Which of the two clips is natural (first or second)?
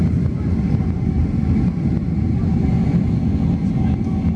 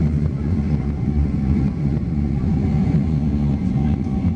first